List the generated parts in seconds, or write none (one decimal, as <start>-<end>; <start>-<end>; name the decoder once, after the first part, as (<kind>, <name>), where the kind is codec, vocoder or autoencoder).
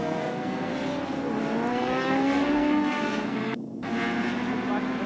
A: 0.0-0.7 (codec, SNAC); 1.7-3.9